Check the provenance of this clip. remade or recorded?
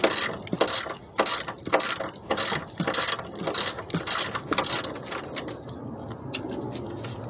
recorded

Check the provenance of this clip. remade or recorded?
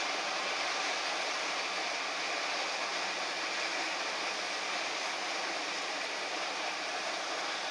recorded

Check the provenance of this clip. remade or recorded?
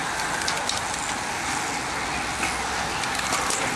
recorded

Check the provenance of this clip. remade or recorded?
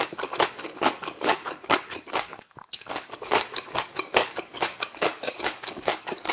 remade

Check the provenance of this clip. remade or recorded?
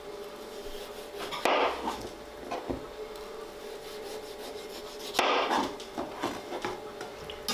recorded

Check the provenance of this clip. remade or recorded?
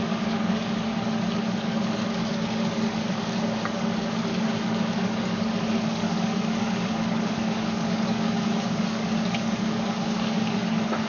remade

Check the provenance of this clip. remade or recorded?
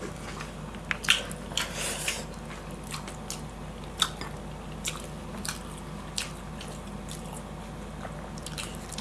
recorded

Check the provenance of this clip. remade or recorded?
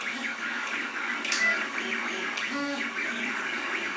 remade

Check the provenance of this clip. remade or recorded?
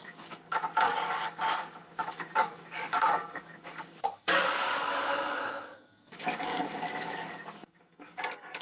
remade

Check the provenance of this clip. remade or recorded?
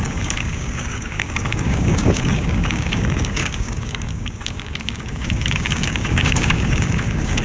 remade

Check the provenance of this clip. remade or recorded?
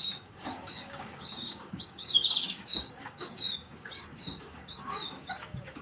remade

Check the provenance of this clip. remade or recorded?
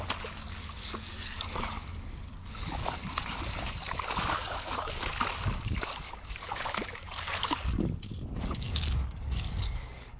remade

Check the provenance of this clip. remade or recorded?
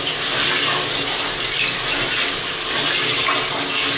recorded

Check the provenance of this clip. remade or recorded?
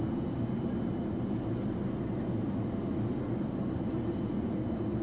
recorded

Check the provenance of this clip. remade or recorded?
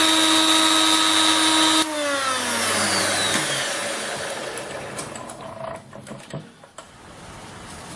recorded